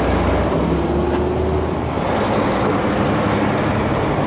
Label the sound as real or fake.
real